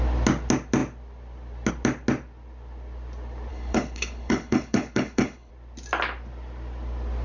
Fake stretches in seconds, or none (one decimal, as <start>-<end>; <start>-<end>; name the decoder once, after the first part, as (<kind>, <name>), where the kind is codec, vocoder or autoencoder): 3.5-5.5 (codec, HILCodec)